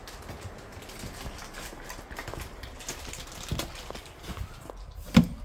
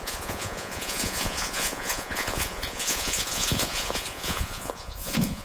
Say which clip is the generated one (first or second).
second